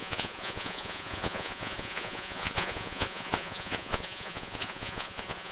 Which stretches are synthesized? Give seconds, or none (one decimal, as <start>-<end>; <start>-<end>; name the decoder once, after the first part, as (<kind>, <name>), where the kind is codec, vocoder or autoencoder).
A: 0.0-5.5 (vocoder, Vocos)